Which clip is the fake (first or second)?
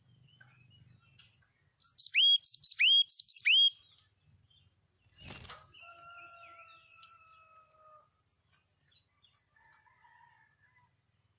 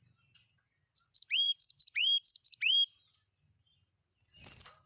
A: second